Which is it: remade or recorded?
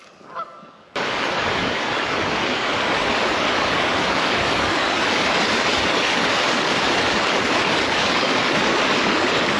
remade